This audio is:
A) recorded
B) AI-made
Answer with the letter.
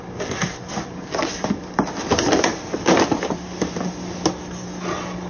A